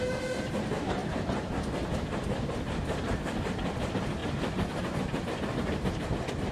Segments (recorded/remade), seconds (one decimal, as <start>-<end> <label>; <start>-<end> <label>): 0.0-6.5 remade